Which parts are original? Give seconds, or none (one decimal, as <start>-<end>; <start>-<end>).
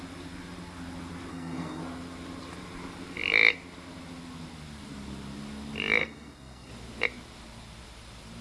0.0-1.3; 1.8-6.0; 6.7-8.4